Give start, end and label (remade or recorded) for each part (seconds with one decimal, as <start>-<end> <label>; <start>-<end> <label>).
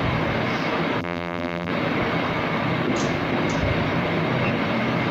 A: 0.0-1.0 recorded; 1.0-1.7 remade; 1.7-5.1 recorded